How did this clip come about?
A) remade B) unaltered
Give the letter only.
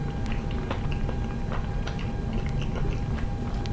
B